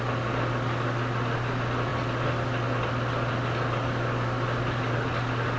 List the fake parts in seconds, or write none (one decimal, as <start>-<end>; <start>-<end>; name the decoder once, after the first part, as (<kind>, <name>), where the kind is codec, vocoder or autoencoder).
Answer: none